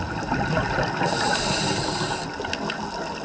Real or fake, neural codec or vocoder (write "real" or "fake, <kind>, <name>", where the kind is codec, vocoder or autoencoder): real